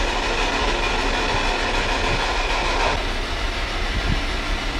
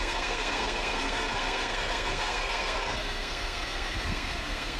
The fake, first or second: second